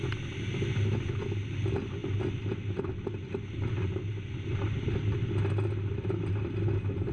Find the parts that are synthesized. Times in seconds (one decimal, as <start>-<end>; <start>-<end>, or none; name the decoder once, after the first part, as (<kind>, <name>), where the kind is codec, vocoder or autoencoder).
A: none